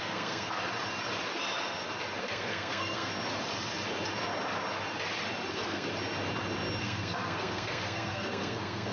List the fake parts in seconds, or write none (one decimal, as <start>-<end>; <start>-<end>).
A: 0.0-0.6; 2.2-3.1; 5.5-5.9; 6.8-8.9